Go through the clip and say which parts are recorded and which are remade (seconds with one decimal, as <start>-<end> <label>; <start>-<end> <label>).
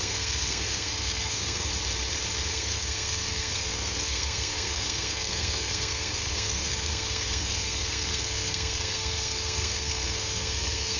0.0-1.7 remade; 1.7-2.5 recorded; 2.5-11.0 remade